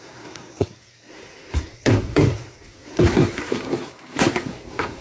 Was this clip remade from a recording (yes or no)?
yes